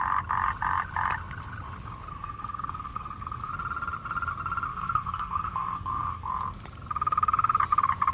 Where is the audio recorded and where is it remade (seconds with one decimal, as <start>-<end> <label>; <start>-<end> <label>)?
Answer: 0.0-2.1 recorded; 2.1-3.5 remade; 3.5-4.7 recorded; 4.7-6.3 remade; 6.3-8.1 recorded